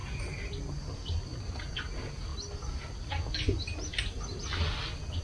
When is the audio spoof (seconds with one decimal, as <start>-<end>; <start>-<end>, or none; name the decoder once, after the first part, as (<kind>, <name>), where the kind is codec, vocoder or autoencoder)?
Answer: none